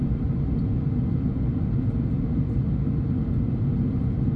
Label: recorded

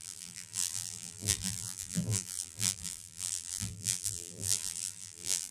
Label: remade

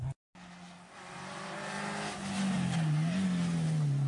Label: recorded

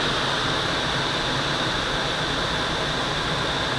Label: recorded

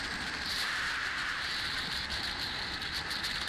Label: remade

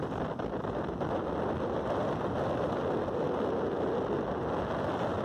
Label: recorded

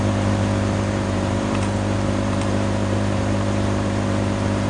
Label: remade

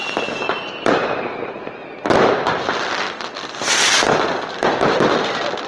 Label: remade